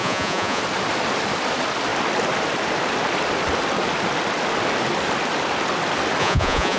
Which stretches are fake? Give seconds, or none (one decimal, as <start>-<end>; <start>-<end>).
0.0-0.6; 6.2-6.8